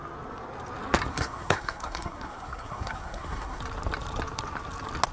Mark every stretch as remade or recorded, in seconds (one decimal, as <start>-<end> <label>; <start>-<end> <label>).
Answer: 0.0-1.1 recorded; 1.1-3.6 remade; 3.6-5.1 recorded